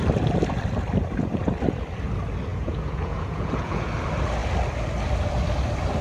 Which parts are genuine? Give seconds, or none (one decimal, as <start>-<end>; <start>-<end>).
0.0-2.5; 3.9-6.0